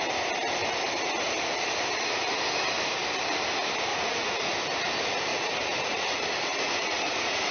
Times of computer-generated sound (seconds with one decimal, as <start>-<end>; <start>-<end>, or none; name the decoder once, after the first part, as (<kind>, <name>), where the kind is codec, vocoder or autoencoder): 3.9-4.5 (vocoder, Vocos); 5.3-7.5